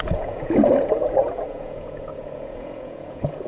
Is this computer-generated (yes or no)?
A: yes